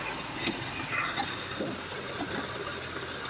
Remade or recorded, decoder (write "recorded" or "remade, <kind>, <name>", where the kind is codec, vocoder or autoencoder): recorded